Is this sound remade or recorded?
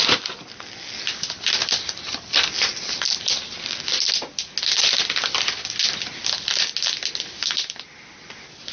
recorded